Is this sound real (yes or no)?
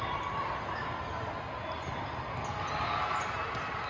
yes